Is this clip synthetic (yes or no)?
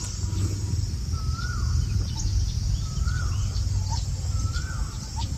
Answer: no